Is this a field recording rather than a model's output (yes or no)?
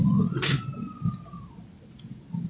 yes